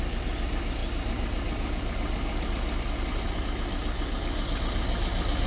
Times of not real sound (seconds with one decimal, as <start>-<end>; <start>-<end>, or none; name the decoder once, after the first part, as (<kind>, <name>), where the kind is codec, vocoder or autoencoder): none